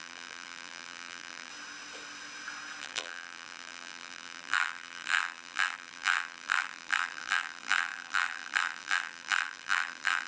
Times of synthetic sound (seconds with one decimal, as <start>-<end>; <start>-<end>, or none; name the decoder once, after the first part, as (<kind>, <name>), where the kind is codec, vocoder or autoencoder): 0.0-1.5 (vocoder, BigVGAN v2); 2.8-10.3